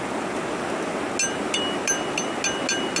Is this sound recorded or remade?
recorded